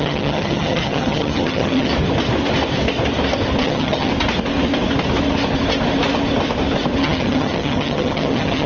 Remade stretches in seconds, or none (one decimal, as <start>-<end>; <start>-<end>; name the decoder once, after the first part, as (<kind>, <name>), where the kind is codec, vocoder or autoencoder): 0.0-1.9 (vocoder, HiFi-GAN); 3.6-4.1; 7.0-8.7